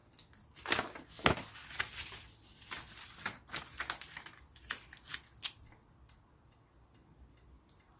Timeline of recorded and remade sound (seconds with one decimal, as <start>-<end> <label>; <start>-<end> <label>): 0.0-8.0 recorded